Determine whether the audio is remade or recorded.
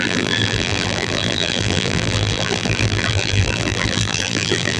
remade